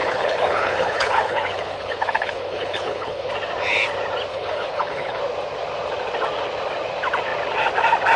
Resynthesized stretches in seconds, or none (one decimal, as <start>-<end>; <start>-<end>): 0.0-3.3; 4.3-5.2